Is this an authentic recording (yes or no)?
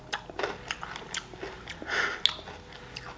yes